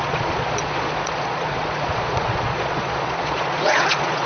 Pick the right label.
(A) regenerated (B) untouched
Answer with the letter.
A